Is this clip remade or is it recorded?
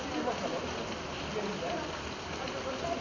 recorded